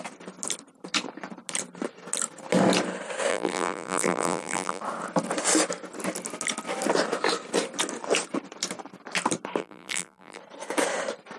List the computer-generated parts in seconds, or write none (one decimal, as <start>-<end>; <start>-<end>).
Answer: 3.3-4.8; 9.6-10.4